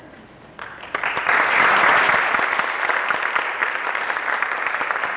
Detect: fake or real real